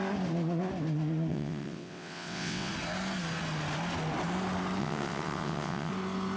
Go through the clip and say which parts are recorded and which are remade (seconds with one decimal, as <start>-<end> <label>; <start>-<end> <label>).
0.0-1.3 recorded; 1.3-2.7 remade; 2.7-4.8 recorded; 4.8-5.9 remade; 5.9-6.4 recorded